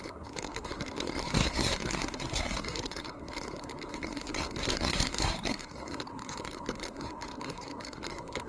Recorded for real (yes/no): no